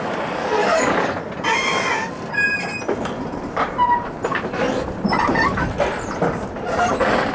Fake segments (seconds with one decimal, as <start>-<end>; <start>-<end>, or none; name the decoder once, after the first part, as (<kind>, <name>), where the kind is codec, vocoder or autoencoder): 0.6-1.2 (codec, DAC)